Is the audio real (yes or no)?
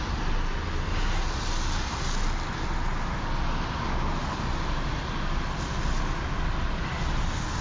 yes